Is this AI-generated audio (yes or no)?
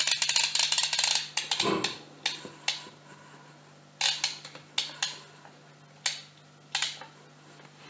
no